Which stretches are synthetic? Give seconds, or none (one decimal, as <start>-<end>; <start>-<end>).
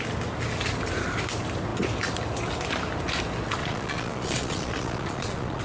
3.6-5.6